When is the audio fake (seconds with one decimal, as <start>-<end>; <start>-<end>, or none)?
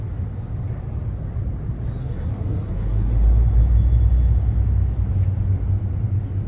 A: 2.0-3.1